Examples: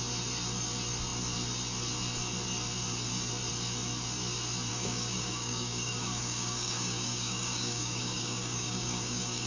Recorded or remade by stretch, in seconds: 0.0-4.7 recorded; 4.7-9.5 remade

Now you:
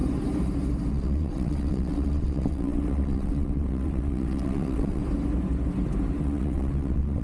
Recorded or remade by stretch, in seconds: 0.0-0.9 recorded; 0.9-5.0 remade; 5.0-6.2 recorded; 6.2-7.2 remade

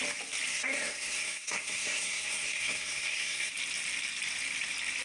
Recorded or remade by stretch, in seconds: 0.0-0.5 recorded; 0.5-3.5 remade; 3.5-5.0 recorded

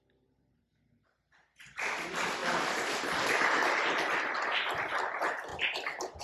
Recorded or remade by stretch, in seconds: 0.0-6.2 recorded

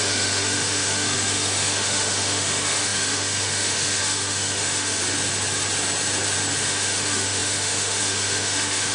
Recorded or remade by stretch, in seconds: 0.0-5.0 remade; 5.0-6.6 recorded; 6.6-8.9 remade

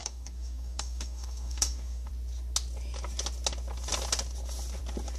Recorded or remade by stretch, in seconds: 0.0-2.1 remade; 2.1-5.2 recorded

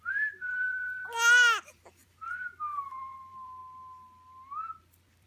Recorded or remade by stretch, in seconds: 0.0-1.0 remade; 1.0-1.7 recorded; 1.7-2.2 remade; 2.2-2.8 recorded; 2.8-3.6 remade; 3.6-4.8 recorded; 4.8-5.3 remade

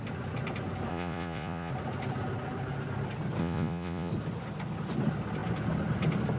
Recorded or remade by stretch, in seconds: 0.0-0.9 recorded; 0.9-1.7 remade; 1.7-3.4 recorded; 3.4-4.1 remade; 4.1-6.4 recorded